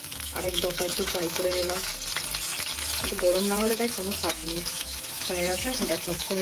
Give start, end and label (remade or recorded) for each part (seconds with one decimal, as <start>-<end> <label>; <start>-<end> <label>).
0.0-1.9 remade; 1.9-3.1 recorded; 3.1-6.4 remade